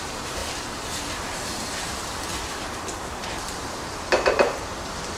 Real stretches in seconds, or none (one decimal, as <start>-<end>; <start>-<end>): 0.4-1.1; 2.3-3.2